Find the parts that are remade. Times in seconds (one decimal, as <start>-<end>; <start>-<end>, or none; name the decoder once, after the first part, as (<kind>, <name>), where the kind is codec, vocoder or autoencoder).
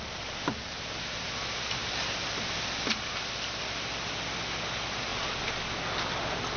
1.8-2.5 (vocoder, BigVGAN v2)